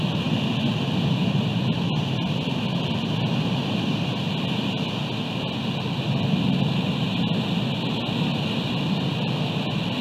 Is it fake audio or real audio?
real